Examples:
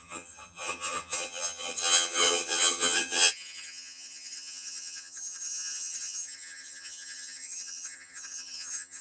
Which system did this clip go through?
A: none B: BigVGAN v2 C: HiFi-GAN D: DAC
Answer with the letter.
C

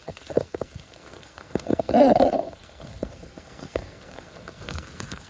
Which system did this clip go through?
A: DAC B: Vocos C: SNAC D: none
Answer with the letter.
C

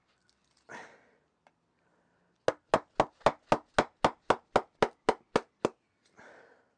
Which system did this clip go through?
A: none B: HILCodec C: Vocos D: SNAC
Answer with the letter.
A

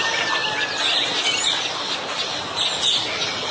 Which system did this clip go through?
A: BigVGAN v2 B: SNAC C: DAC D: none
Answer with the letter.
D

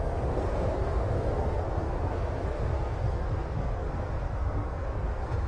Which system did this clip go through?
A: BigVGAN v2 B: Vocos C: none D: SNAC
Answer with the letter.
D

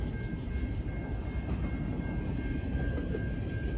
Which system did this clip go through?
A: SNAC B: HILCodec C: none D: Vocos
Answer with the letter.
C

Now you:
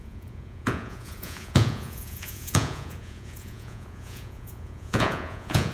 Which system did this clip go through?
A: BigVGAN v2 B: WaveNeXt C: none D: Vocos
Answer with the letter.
D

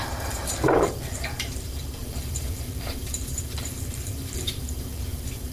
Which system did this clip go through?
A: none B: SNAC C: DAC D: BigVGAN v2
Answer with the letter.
D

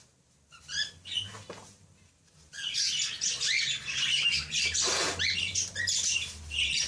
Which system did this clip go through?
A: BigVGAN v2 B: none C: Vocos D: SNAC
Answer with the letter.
B